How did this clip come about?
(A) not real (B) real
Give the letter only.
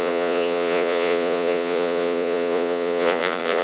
A